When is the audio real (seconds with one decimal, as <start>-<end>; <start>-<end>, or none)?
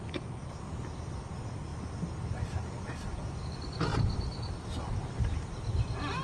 0.0-6.2